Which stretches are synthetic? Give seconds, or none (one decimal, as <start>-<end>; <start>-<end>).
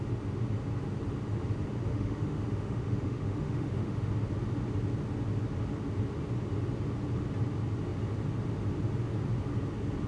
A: 1.9-4.1